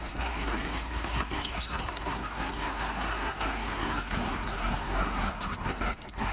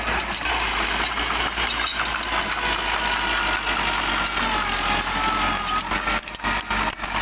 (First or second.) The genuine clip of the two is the second